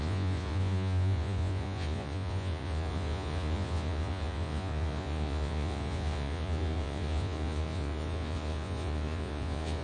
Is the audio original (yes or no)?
no